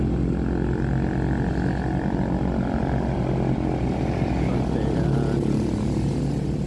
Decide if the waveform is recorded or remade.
recorded